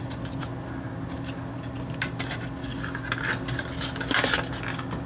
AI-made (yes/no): no